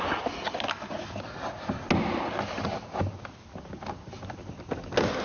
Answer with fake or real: real